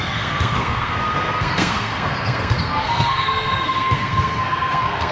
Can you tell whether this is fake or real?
fake